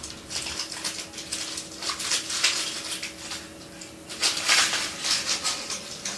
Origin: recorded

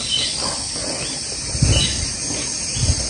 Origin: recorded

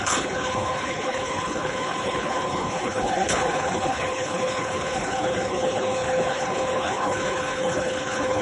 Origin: remade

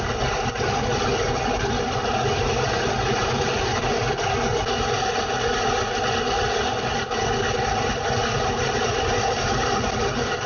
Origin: recorded